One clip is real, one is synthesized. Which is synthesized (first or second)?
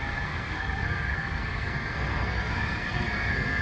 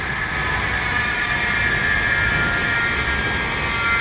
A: first